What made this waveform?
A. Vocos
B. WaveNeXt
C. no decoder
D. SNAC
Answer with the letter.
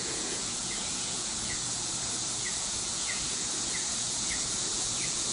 A